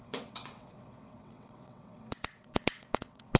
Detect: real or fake fake